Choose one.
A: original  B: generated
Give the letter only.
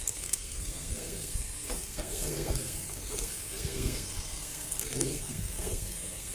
B